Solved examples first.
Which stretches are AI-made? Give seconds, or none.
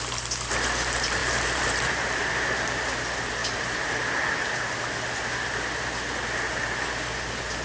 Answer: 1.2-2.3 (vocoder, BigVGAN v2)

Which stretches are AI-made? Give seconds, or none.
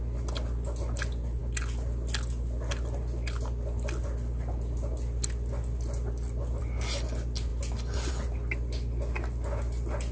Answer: none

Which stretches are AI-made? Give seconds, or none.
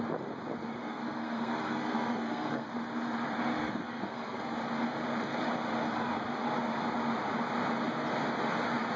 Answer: 0.8-2.7 (codec, SNAC); 3.6-4.4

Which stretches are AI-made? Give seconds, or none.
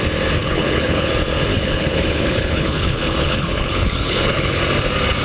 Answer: 0.4-1.1 (codec, HILCodec); 1.5-4.6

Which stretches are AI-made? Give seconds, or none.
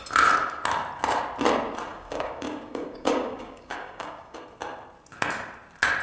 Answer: 1.9-4.4 (codec, DAC)